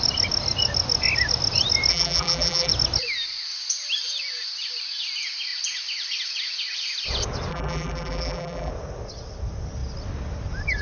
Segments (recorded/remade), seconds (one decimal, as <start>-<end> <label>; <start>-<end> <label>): 0.0-1.9 recorded; 1.9-2.7 remade; 2.7-7.5 recorded; 7.5-8.7 remade; 8.7-10.8 recorded